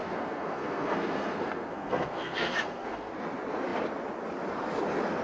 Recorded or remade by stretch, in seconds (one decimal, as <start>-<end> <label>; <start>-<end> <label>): 0.0-3.1 remade; 3.1-5.2 recorded